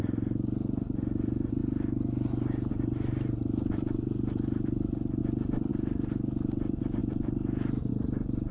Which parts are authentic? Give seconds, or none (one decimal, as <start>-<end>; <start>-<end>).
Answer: 1.6-2.7; 5.2-5.7